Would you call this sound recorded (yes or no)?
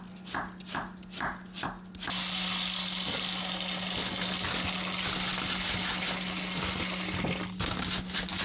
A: yes